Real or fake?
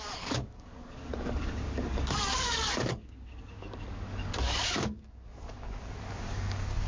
fake